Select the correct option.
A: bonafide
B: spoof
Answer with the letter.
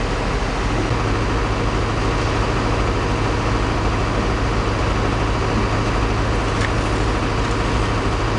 A